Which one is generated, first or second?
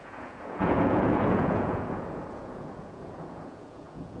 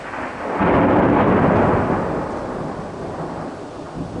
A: first